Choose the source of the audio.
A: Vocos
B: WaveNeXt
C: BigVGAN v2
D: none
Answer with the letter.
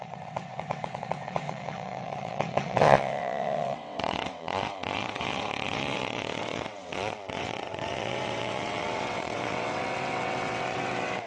B